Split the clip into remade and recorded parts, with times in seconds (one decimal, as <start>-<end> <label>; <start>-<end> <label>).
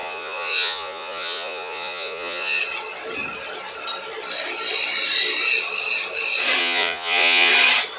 0.0-2.6 remade; 2.6-6.6 recorded; 6.6-7.5 remade; 7.5-8.0 recorded